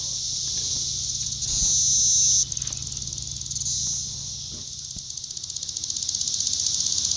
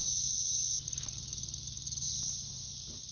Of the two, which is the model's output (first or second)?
second